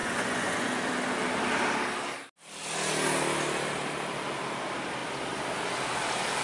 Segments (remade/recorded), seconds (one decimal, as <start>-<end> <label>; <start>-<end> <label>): 0.0-0.8 remade; 0.8-6.4 recorded